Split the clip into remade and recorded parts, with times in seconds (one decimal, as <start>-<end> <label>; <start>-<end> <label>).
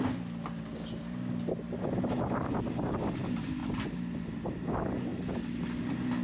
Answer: 0.0-6.2 recorded